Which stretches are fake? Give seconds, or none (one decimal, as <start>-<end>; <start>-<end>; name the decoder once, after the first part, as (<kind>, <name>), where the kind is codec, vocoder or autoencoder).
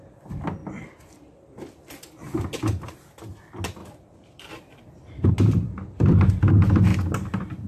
none